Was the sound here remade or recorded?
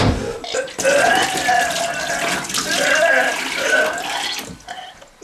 recorded